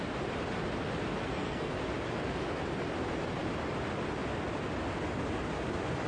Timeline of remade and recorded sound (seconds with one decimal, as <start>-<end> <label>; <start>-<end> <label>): 0.0-1.2 recorded; 1.2-1.8 remade; 1.8-6.1 recorded